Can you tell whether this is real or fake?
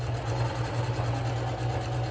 real